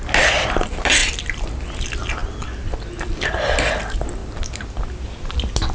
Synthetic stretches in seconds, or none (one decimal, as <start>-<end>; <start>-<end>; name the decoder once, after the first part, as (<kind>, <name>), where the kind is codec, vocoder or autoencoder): none